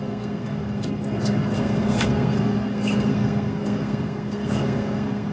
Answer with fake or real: fake